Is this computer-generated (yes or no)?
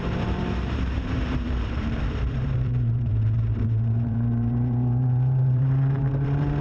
yes